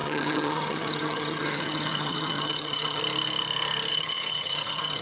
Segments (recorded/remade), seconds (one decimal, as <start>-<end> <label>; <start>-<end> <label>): 0.0-3.0 remade; 3.0-3.9 recorded; 3.9-5.0 remade